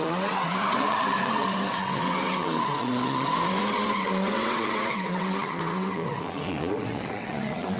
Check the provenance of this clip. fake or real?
fake